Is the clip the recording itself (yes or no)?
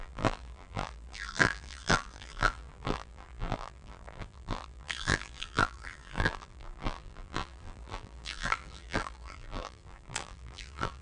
no